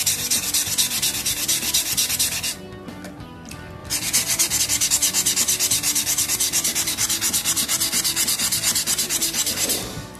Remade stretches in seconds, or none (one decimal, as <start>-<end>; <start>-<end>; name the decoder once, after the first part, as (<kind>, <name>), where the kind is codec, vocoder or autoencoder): 3.8-4.6 (vocoder, BigVGAN v2)